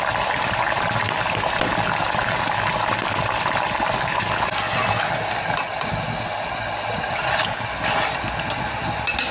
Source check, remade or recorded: recorded